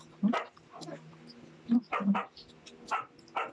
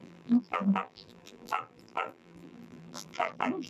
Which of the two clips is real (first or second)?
first